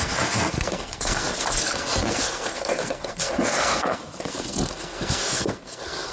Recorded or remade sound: remade